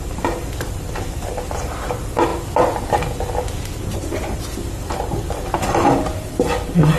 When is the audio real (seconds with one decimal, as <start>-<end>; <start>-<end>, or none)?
0.0-7.0